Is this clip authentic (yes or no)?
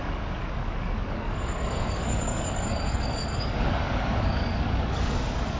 no